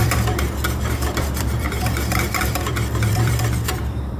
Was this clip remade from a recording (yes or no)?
yes